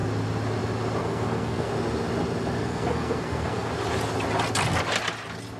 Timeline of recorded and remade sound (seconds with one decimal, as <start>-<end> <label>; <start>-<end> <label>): 0.0-1.0 recorded; 1.0-1.7 remade; 1.7-2.6 recorded; 2.6-3.7 remade; 3.7-5.6 recorded

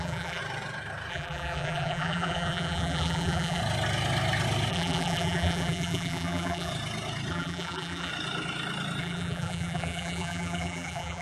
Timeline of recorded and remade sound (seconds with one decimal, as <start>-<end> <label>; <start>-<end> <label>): 0.0-0.4 remade; 0.4-1.1 recorded; 1.1-3.6 remade; 3.6-4.7 recorded; 4.7-6.7 remade; 6.7-7.3 recorded; 7.3-8.1 remade; 8.1-9.0 recorded; 9.0-11.2 remade

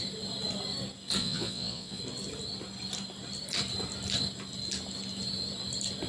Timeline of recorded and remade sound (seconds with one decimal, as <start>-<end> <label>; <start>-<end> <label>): 0.0-1.2 recorded; 1.2-2.0 remade; 2.0-6.1 recorded

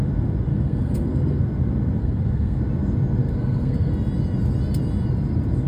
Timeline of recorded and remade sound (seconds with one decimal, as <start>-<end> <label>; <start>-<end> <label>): 0.0-0.5 recorded; 0.5-1.4 remade; 1.4-2.0 recorded; 2.0-2.6 remade; 2.6-3.2 recorded; 3.2-3.9 remade; 3.9-5.7 recorded

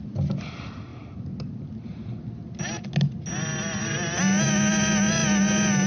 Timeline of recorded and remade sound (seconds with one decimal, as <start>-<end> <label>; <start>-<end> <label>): 0.0-5.9 recorded

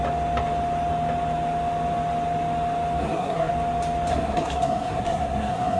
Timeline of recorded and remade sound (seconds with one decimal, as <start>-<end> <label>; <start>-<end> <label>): 0.0-3.0 recorded; 3.0-3.5 remade; 3.5-4.1 recorded; 4.1-5.8 remade